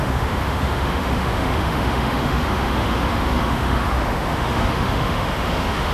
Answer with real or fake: fake